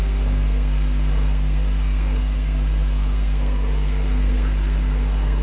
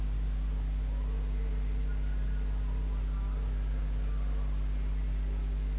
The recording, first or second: second